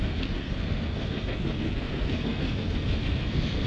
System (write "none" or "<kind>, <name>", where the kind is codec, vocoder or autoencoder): codec, SNAC